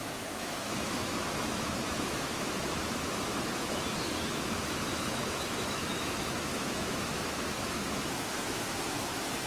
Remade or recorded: remade